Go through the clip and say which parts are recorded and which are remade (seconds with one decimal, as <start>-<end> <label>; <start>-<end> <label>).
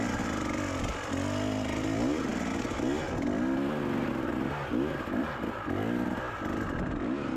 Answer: 0.0-7.4 recorded